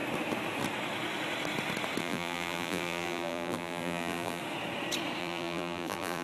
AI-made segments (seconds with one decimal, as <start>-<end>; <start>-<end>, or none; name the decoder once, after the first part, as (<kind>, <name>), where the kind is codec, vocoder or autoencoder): 2.0-4.4 (vocoder, BigVGAN v2); 5.2-6.2